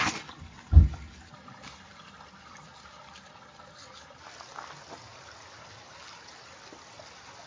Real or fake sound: real